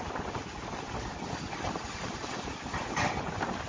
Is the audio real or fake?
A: real